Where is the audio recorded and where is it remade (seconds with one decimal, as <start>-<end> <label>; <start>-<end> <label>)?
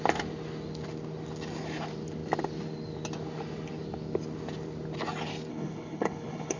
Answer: 0.0-5.5 recorded; 5.5-6.6 remade